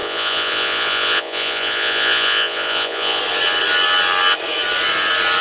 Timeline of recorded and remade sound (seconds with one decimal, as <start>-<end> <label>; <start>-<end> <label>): 0.0-3.2 remade; 3.2-5.4 recorded